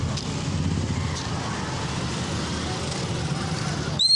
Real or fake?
real